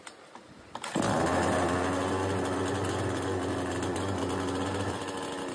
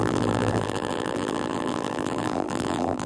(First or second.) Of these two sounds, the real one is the first